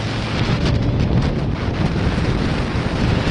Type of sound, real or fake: real